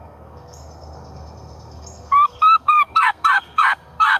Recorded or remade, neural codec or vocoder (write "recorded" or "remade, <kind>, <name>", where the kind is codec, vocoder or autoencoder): remade, codec, SNAC